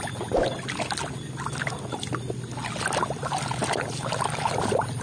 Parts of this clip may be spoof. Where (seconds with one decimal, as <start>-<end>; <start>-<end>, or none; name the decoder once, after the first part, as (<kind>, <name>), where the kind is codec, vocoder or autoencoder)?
none

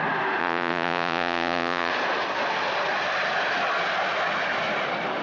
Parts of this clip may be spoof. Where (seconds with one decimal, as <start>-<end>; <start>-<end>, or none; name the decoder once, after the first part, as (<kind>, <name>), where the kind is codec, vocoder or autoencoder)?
0.4-1.9 (vocoder, Vocos)

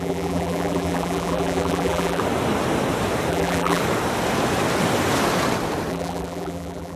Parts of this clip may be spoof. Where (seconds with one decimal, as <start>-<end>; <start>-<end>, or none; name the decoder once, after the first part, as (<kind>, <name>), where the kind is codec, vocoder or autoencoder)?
0.0-2.2 (vocoder, BigVGAN v2); 3.3-3.8; 5.9-7.0

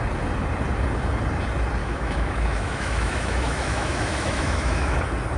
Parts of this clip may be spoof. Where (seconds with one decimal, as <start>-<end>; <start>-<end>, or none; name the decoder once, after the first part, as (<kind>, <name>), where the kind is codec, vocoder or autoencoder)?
1.8-5.0 (autoencoder, DAC-VAE)

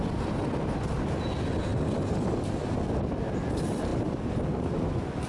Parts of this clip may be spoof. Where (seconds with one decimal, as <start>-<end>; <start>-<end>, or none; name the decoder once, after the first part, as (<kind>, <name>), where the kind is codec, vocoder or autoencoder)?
none

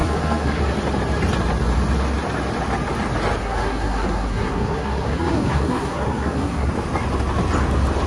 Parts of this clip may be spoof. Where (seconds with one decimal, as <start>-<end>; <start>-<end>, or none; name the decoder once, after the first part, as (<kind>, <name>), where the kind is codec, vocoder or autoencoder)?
0.0-0.6 (codec, SNAC); 3.4-6.7